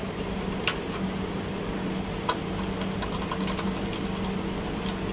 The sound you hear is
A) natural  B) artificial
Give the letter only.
A